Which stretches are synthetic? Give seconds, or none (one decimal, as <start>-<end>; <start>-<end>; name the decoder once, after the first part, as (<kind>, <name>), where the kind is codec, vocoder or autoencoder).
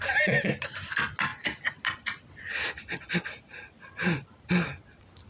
none